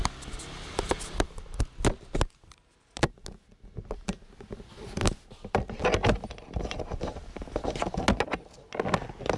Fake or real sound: real